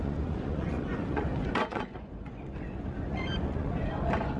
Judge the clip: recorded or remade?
remade